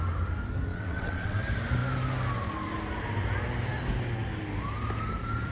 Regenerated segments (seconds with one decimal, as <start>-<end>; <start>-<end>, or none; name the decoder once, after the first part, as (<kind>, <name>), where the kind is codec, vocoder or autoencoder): 0.7-1.4 (vocoder, WaveNeXt)